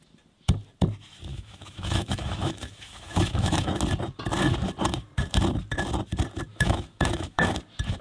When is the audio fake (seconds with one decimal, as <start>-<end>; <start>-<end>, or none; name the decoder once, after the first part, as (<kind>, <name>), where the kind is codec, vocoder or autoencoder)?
1.3-3.7 (autoencoder, DAC-VAE); 6.5-7.5